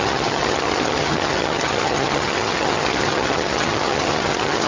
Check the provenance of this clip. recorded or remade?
remade